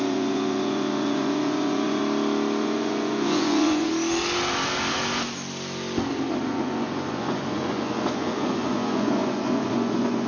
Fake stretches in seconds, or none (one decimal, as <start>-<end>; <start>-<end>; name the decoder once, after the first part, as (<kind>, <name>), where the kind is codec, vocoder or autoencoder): 0.0-2.0 (vocoder, Vocos); 2.6-3.9; 6.4-10.3

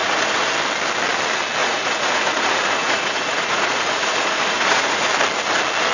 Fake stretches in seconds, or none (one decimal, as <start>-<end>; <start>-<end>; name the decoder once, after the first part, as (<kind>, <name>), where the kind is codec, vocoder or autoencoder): 0.0-0.5 (vocoder, Vocos); 1.6-5.1

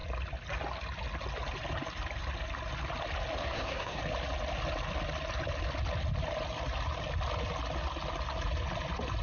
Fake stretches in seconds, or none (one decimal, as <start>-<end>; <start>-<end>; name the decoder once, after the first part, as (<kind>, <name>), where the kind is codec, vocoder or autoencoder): 3.4-4.0 (codec, SNAC)

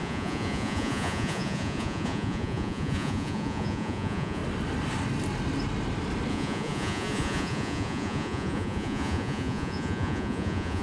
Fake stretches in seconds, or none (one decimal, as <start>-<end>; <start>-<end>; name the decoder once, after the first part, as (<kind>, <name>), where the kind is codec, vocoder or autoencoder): 0.0-4.4 (vocoder, Vocos); 6.3-10.8

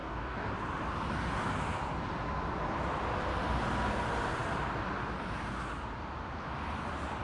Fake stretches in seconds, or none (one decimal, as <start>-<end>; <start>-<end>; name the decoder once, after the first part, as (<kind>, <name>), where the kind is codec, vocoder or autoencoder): 0.0-0.5 (codec, DAC)

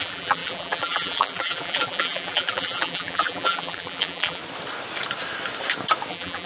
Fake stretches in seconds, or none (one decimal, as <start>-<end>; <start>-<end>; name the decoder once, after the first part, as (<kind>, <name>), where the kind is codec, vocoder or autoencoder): 0.0-4.4 (vocoder, BigVGAN v2); 6.1-6.5

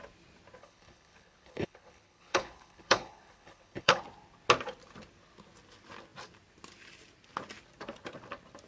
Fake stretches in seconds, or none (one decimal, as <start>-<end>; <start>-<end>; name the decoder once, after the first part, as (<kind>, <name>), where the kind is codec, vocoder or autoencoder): 0.6-4.0 (codec, HILCodec)